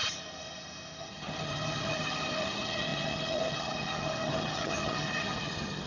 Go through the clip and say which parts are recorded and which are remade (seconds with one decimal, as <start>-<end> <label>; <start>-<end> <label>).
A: 0.0-1.0 recorded; 1.0-5.9 remade